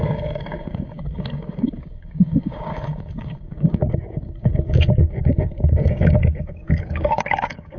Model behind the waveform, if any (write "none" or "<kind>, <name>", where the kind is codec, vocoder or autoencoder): codec, DAC